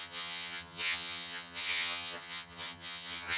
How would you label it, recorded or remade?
remade